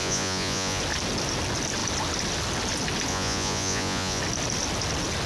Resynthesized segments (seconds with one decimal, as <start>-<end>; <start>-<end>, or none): 0.0-0.8; 3.1-4.2

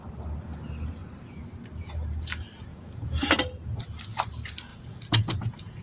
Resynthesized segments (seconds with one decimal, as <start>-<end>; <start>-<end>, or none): 2.7-3.2; 4.7-5.8

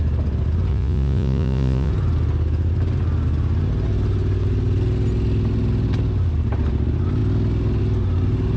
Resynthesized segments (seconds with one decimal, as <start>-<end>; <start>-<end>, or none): 0.7-1.9

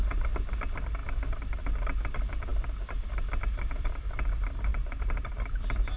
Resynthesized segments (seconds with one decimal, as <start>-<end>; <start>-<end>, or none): none

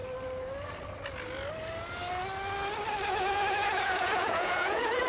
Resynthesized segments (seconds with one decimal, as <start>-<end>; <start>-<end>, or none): 3.1-5.1

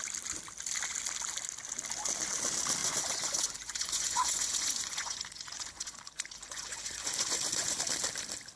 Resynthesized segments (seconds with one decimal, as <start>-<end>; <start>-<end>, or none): 2.8-7.8

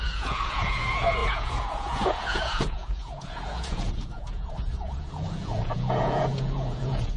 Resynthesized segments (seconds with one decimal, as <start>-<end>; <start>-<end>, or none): 0.0-7.2

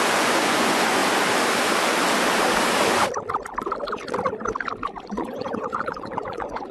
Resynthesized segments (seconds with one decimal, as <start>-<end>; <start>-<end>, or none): 0.0-1.0; 5.0-6.7